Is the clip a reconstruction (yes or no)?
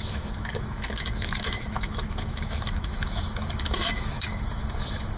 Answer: yes